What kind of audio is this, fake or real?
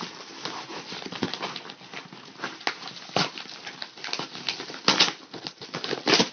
real